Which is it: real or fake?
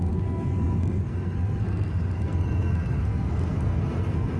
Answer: fake